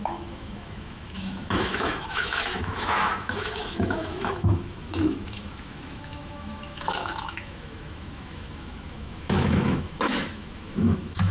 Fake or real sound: fake